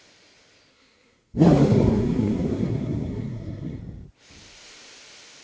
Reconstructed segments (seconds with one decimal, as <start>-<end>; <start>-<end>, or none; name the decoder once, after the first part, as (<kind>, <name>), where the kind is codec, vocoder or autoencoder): 0.7-3.8 (codec, SNAC)